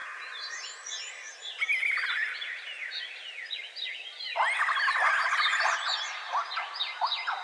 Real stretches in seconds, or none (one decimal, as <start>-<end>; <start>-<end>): 0.0-7.4